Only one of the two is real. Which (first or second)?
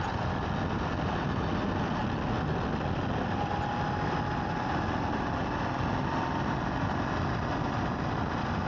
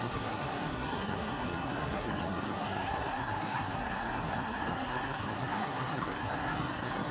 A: first